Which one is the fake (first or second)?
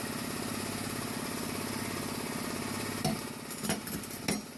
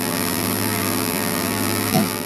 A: second